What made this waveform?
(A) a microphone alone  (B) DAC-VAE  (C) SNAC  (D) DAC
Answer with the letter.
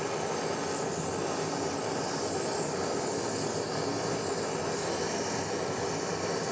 A